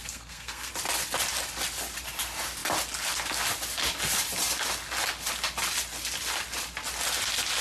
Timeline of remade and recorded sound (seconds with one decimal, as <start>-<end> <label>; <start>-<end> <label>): 0.0-0.7 remade; 0.7-7.6 recorded